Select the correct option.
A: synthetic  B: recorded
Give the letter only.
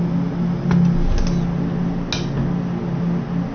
B